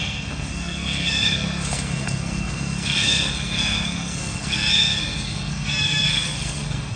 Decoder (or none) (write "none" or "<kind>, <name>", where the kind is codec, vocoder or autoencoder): codec, SNAC